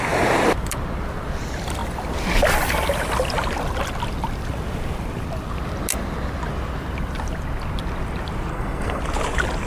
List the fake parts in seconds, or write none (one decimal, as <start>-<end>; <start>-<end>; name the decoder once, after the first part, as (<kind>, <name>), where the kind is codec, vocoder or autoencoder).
8.5-9.0 (codec, SNAC)